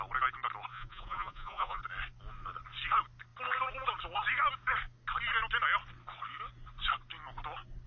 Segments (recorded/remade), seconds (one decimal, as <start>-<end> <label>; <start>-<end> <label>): 0.0-0.7 recorded; 0.7-1.8 remade; 1.8-7.9 recorded